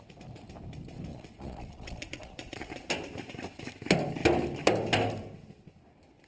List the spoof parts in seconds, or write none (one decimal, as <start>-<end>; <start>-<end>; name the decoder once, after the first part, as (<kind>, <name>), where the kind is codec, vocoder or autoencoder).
1.1-2.7 (vocoder, Vocos)